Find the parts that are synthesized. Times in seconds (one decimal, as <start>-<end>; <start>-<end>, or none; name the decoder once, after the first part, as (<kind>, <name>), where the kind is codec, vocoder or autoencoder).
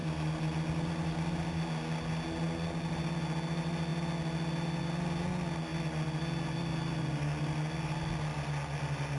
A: none